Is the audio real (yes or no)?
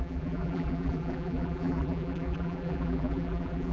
no